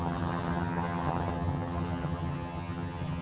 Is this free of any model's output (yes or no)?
no